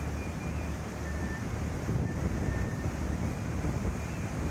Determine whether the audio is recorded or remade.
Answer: remade